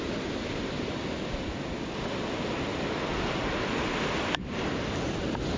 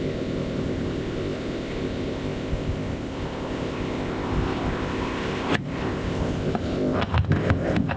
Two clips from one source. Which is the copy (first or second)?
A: second